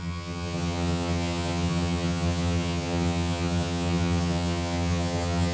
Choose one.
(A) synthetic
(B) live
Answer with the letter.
A